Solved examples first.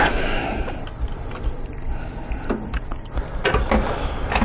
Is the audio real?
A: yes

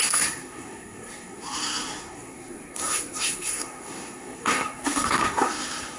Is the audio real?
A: no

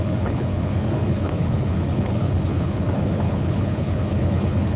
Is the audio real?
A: no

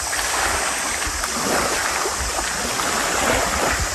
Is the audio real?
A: yes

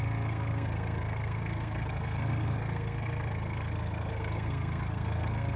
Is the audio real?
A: no